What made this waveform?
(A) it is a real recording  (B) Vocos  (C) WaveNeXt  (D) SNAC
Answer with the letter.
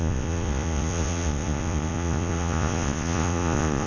B